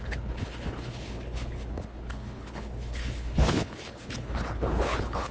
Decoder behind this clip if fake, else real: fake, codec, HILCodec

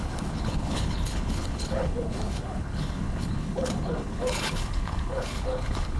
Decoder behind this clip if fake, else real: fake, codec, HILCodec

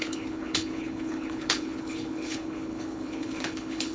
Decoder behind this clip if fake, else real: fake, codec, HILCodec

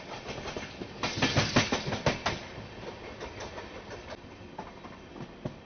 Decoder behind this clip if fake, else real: real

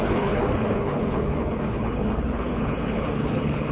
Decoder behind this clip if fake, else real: fake, codec, HILCodec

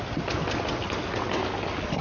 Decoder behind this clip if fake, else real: real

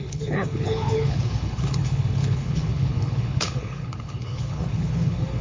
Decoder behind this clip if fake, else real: fake, codec, HILCodec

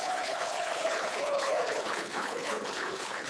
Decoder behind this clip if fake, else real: fake, codec, HILCodec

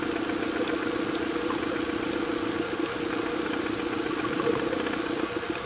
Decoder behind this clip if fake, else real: real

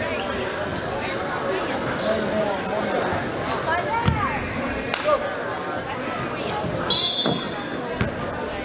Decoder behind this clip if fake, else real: real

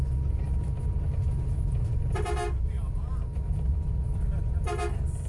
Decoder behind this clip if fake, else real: real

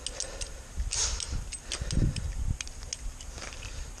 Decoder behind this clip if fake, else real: real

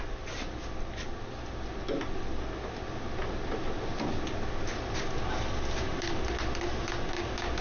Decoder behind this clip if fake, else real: real